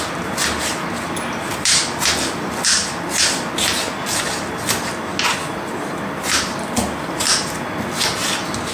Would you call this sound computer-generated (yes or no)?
no